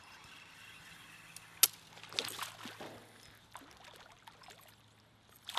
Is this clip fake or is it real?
real